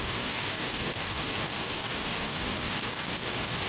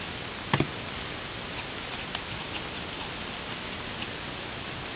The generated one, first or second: first